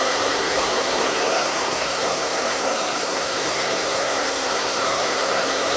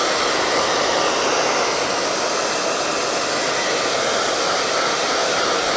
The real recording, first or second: second